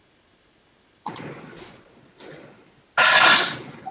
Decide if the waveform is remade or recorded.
recorded